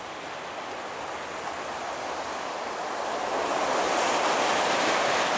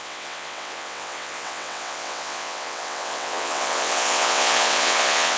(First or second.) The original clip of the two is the first